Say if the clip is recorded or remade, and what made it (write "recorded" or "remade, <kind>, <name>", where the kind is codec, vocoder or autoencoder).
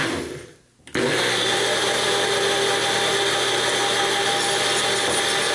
recorded